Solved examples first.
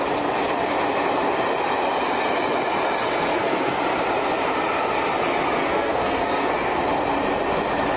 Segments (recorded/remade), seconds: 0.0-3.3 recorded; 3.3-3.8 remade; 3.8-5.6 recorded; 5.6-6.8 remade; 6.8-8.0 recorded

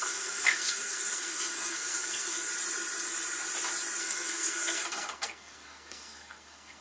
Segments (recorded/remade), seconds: 0.0-2.5 remade; 2.5-4.0 recorded; 4.0-6.8 remade

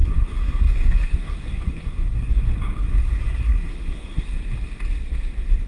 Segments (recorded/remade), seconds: 0.0-2.3 remade; 2.3-2.9 recorded; 2.9-4.4 remade; 4.4-5.7 recorded

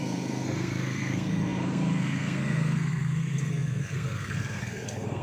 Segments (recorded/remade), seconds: 0.0-5.2 remade

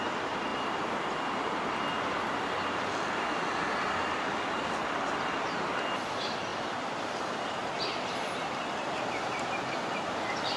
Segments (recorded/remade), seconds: 0.0-10.6 recorded

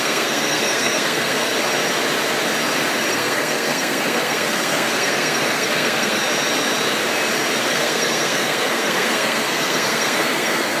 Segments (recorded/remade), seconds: 0.0-1.5 remade; 1.5-3.1 recorded; 3.1-6.2 remade; 6.2-7.6 recorded; 7.6-10.8 remade